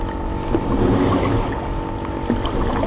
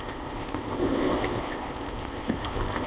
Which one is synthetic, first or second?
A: second